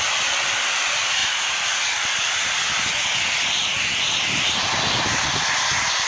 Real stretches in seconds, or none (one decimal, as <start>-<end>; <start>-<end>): 0.0-6.1